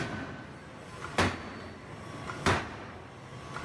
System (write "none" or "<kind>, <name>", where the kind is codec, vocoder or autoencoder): none